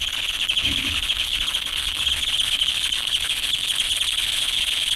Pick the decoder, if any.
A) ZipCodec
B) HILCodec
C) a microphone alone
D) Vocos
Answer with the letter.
B